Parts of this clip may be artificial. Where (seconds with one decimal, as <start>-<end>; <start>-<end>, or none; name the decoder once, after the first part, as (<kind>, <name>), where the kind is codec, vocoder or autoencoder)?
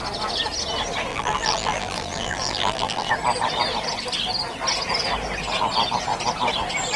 1.1-3.1 (vocoder, BigVGAN v2)